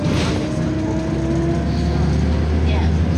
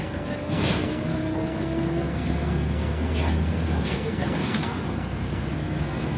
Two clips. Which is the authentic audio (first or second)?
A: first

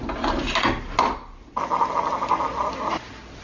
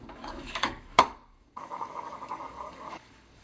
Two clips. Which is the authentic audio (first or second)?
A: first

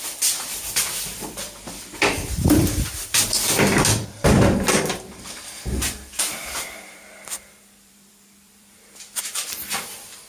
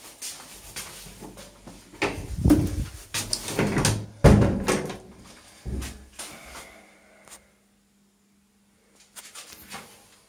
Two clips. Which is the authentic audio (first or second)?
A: second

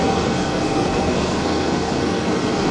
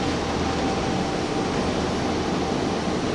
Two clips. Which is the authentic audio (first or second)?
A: second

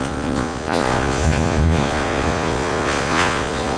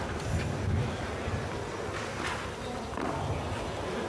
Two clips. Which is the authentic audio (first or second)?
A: second